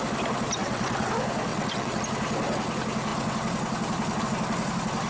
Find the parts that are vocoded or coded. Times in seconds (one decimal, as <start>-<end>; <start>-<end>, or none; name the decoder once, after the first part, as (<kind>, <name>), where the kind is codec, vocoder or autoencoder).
0.6-1.1 (vocoder, WaveNeXt); 1.5-2.0

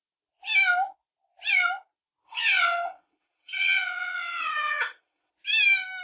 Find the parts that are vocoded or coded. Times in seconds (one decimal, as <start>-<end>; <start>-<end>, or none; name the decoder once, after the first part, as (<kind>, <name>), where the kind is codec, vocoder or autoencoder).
2.3-5.3 (vocoder, WaveNeXt)